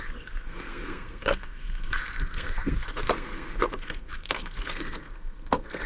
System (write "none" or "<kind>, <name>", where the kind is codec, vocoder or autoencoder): codec, SNAC